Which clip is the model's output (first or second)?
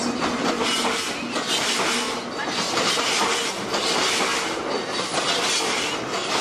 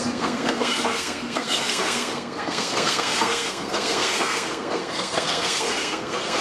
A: second